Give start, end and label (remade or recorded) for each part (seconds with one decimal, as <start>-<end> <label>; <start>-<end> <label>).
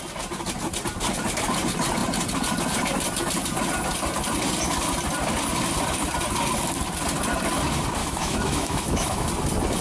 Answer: 0.0-8.0 recorded; 8.0-9.3 remade; 9.3-9.8 recorded